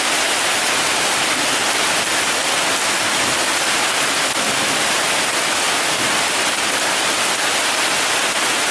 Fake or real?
real